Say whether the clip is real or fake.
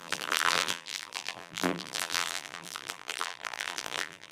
fake